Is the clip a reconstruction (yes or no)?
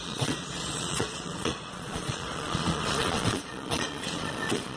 yes